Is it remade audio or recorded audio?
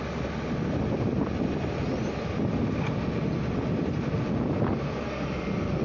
recorded